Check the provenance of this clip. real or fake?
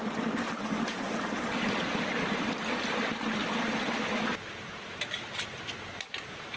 real